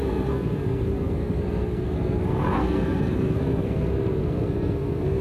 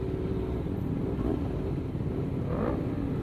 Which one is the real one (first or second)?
second